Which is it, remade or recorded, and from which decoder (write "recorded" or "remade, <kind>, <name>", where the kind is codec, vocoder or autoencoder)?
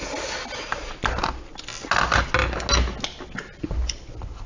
recorded